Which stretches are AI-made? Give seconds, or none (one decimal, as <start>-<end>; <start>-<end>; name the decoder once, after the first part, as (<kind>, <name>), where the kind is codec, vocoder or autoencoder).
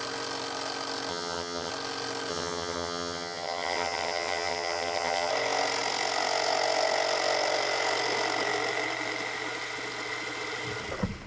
1.1-1.7 (vocoder, HiFi-GAN); 2.3-5.3